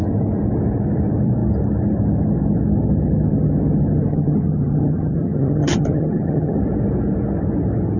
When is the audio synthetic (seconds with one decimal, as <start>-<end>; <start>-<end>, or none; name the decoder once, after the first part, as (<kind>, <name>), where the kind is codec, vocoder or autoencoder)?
4.1-6.6 (vocoder, HiFi-GAN)